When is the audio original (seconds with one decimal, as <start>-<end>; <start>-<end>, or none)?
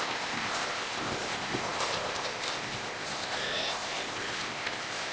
none